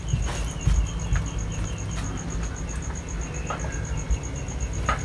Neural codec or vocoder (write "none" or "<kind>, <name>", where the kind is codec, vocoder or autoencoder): none